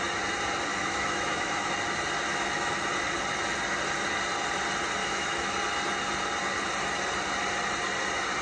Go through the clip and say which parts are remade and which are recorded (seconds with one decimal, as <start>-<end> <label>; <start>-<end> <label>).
0.0-0.7 recorded; 0.7-1.7 remade; 1.7-2.3 recorded; 2.3-2.9 remade; 2.9-5.0 recorded; 5.0-5.5 remade; 5.5-8.4 recorded